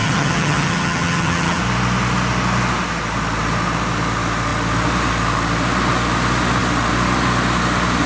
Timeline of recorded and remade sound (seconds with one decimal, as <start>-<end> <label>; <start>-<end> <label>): 0.0-1.6 remade; 1.6-8.1 recorded